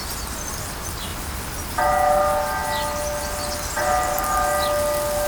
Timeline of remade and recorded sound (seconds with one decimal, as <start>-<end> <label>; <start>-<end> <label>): 0.0-1.1 recorded; 1.1-1.8 remade; 1.8-5.3 recorded